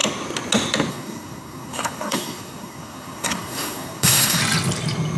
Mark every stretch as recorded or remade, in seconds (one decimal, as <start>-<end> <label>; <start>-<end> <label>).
0.0-0.9 recorded; 0.9-4.4 remade; 4.4-5.2 recorded